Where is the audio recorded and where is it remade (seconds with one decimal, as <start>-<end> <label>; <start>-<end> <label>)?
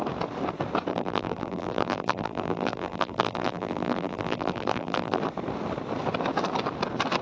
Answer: 0.0-0.9 recorded; 0.9-5.2 remade; 5.2-7.2 recorded